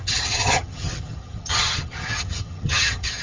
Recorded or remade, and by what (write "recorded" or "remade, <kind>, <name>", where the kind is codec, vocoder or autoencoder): remade, vocoder, HiFi-GAN